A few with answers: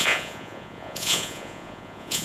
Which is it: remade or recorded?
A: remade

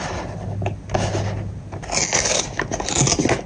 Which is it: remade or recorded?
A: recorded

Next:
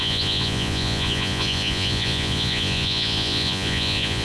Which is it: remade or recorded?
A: remade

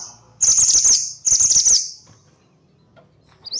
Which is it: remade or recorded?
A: recorded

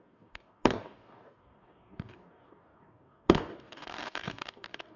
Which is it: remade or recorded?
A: remade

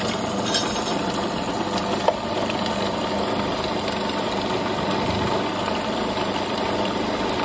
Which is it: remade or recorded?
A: recorded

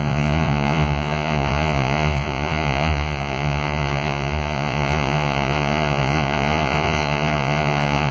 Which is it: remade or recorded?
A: remade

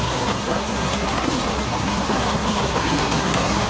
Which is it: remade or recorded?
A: remade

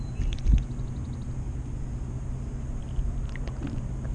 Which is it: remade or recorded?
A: recorded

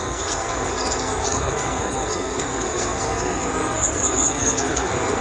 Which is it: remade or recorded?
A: remade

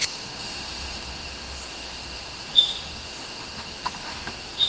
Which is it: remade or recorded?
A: remade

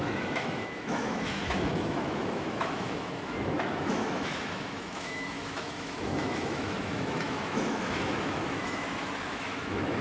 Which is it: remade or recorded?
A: remade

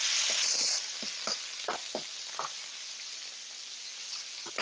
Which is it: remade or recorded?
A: recorded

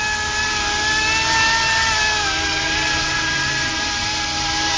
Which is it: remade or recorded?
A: recorded